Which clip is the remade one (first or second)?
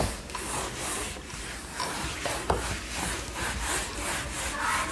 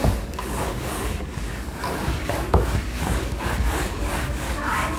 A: second